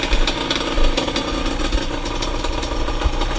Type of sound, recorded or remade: recorded